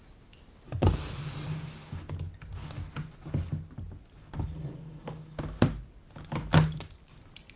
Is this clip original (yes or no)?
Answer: yes